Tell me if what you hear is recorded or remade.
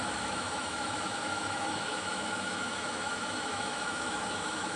remade